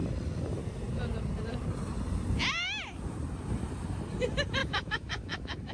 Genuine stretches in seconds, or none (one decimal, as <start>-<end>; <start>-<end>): 0.0-4.6